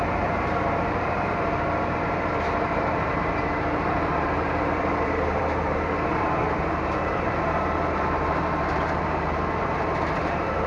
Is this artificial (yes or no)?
yes